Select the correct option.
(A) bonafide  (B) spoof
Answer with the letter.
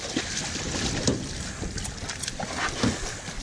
A